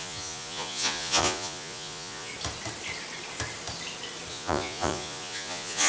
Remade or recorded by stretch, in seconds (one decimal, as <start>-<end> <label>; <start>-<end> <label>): 0.0-2.3 remade; 2.3-4.3 recorded; 4.3-5.9 remade